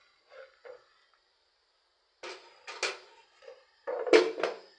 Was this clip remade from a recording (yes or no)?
no